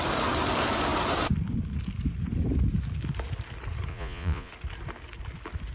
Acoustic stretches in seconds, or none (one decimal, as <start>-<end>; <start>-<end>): 0.0-3.9; 4.5-5.7